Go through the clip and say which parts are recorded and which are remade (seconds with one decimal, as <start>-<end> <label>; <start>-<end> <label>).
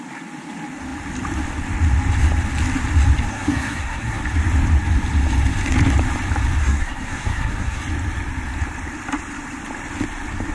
0.0-3.3 recorded; 3.3-4.2 remade; 4.2-6.6 recorded; 6.6-7.8 remade; 7.8-10.5 recorded